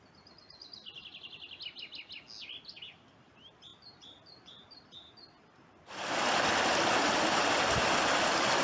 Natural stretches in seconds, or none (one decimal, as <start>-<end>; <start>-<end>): 0.0-8.6